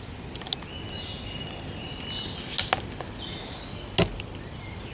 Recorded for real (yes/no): yes